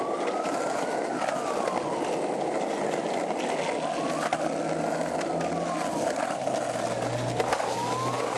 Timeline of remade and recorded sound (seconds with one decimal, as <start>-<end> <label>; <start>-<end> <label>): 0.0-7.5 recorded; 7.5-8.4 remade